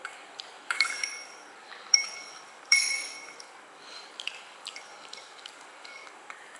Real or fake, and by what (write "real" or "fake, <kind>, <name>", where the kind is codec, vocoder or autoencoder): fake, codec, DAC